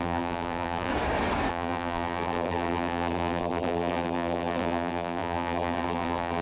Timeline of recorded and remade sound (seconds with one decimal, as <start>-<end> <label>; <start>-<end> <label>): 0.0-0.9 remade; 0.9-1.5 recorded; 1.5-6.4 remade

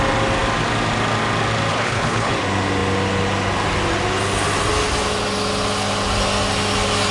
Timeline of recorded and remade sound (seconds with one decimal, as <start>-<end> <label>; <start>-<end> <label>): 0.0-1.7 recorded; 1.7-2.3 remade; 2.3-7.1 recorded

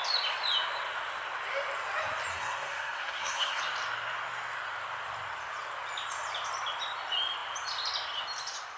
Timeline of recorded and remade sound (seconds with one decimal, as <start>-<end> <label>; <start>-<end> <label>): 0.0-2.3 recorded; 2.3-3.6 remade; 3.6-8.8 recorded

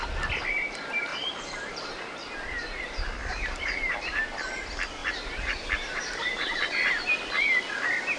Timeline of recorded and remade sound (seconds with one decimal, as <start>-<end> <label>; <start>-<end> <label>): 0.0-1.1 recorded; 1.1-2.8 remade; 2.8-3.3 recorded; 3.3-4.2 remade; 4.2-5.0 recorded; 5.0-6.6 remade; 6.6-8.2 recorded

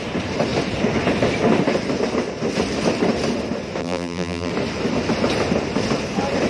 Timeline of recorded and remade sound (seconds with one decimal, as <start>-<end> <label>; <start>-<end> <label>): 0.0-3.8 recorded; 3.8-4.5 remade; 4.5-6.5 recorded

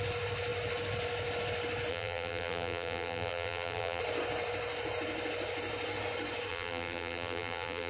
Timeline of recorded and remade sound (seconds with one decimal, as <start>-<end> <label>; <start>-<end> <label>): 0.0-1.9 recorded; 1.9-4.0 remade; 4.0-6.5 recorded; 6.5-7.9 remade

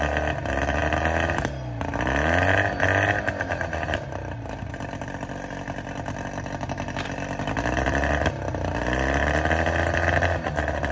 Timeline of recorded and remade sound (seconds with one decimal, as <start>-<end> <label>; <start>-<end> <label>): 0.0-10.9 recorded